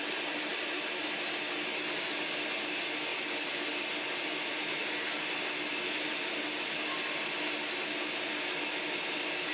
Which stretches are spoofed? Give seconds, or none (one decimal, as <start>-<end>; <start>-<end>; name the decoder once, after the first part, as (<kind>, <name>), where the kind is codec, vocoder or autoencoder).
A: none